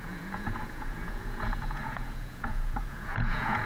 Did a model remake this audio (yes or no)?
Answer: yes